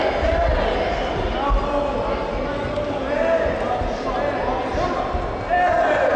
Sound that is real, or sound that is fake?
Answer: real